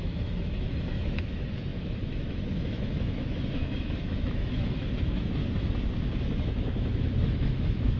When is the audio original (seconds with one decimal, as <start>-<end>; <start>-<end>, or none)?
5.4-6.4